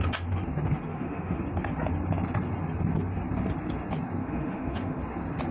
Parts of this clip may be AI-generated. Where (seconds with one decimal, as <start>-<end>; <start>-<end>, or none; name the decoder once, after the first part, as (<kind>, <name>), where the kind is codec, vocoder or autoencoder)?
0.9-1.4 (autoencoder, DAC-VAE); 4.2-5.0